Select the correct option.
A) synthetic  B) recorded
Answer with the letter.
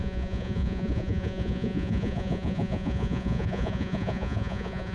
A